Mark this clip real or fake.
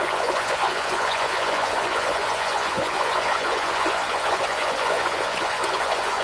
fake